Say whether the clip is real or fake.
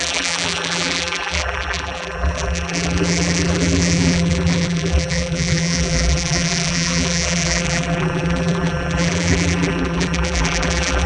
fake